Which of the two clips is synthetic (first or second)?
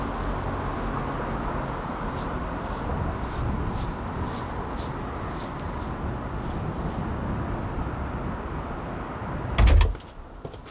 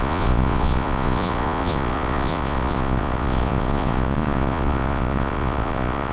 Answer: second